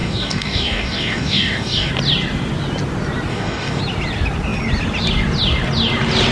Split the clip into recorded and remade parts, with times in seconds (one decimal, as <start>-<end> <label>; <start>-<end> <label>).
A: 0.0-1.9 remade; 1.9-3.3 recorded; 3.3-3.8 remade; 3.8-6.3 recorded